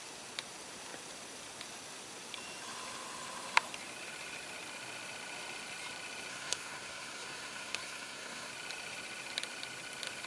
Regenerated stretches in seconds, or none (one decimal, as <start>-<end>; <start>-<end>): 6.3-8.5